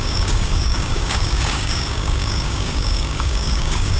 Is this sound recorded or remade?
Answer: remade